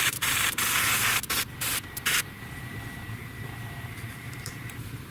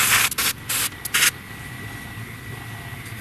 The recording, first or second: second